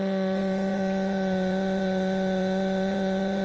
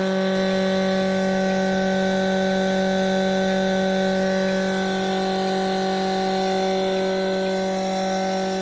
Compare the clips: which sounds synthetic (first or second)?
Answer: first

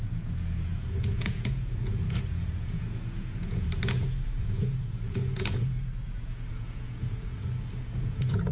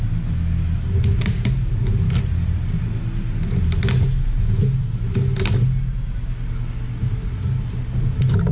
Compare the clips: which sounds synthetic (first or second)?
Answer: first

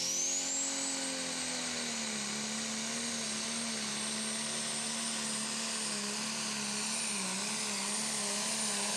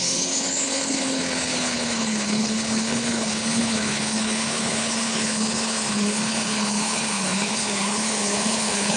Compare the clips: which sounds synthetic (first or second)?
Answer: second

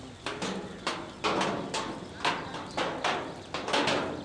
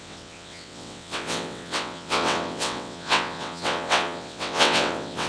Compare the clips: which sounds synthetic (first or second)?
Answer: second